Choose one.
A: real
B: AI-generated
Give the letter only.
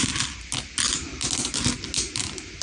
A